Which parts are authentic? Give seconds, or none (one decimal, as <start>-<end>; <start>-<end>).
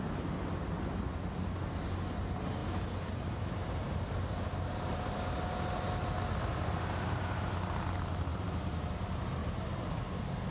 0.0-8.3; 8.9-9.4; 10.1-10.5